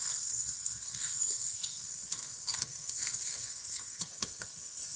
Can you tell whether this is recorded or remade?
remade